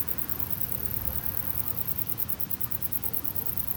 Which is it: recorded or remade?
recorded